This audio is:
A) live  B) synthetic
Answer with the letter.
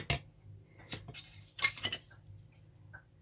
A